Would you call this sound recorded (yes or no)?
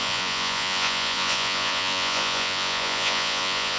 no